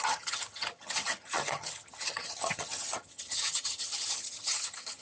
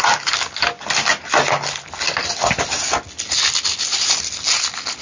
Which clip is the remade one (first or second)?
first